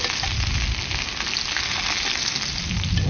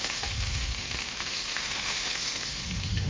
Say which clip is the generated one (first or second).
second